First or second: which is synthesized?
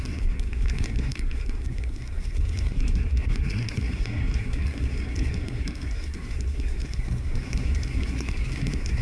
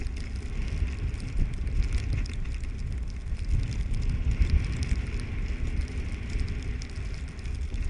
first